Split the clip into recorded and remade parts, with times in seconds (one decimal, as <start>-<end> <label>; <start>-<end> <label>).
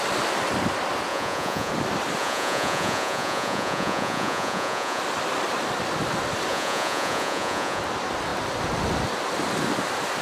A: 0.0-1.1 recorded; 1.1-1.7 remade; 1.7-2.2 recorded; 2.2-5.0 remade; 5.0-6.5 recorded; 6.5-7.8 remade; 7.8-10.2 recorded